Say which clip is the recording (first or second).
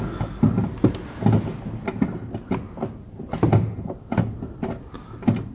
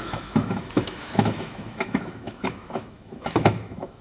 first